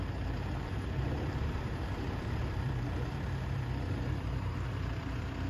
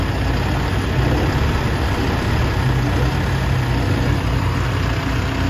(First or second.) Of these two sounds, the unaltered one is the second